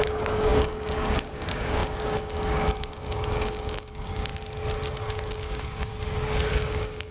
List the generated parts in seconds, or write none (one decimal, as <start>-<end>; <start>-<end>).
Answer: 0.0-4.3; 4.9-5.9; 6.5-7.1